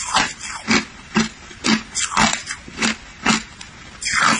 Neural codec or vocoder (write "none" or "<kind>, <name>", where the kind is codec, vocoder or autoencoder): none